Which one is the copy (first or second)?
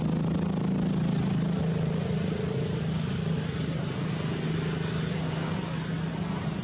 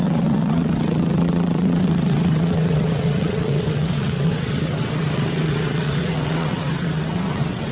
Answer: second